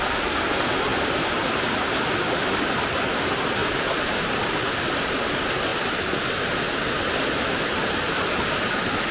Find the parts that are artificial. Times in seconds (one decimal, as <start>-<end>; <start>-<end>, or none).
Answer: 0.9-2.7; 3.6-4.7